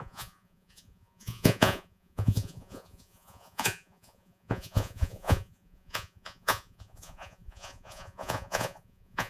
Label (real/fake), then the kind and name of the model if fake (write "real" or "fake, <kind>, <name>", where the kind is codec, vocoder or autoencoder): fake, vocoder, Vocos